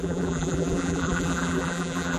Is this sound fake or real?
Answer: fake